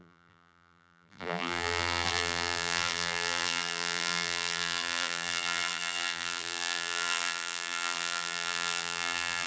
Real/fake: fake